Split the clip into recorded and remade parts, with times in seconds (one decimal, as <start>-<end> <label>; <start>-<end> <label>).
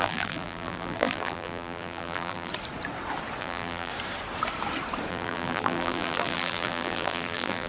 0.0-2.5 remade; 2.5-3.4 recorded; 3.4-3.9 remade; 3.9-5.1 recorded; 5.1-7.7 remade